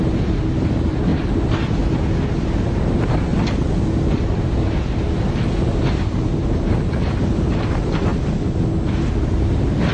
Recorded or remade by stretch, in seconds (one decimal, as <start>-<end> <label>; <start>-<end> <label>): 0.0-1.1 remade; 1.1-2.3 recorded; 2.3-3.3 remade; 3.3-5.9 recorded; 5.9-8.1 remade; 8.1-9.2 recorded; 9.2-9.9 remade